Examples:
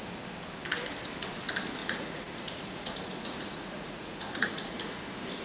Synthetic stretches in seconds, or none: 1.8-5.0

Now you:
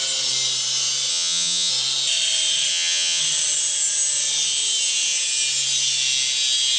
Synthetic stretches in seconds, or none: 1.1-1.7; 2.7-3.2

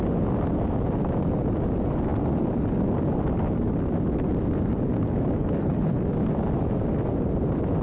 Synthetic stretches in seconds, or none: 5.4-6.0

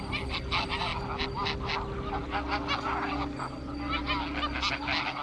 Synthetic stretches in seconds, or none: none

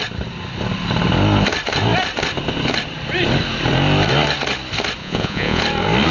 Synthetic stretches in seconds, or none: 5.0-5.6

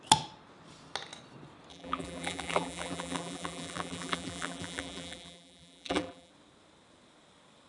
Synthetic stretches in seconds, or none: 1.7-6.3

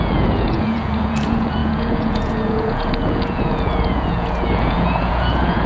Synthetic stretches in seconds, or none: 0.0-5.7